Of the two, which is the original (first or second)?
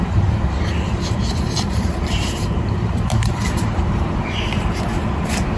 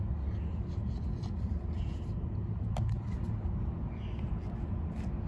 second